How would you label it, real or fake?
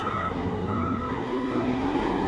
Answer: fake